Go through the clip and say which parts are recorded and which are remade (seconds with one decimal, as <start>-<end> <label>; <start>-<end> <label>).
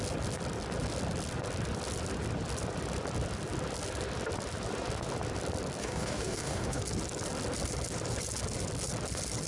0.0-5.8 recorded; 5.8-6.8 remade; 6.8-9.5 recorded